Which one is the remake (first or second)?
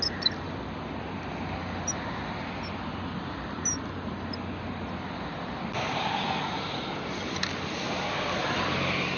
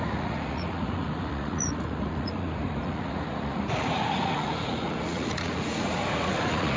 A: second